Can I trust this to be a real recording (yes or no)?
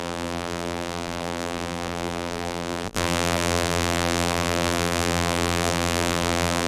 no